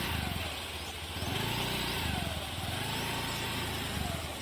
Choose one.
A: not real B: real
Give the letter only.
B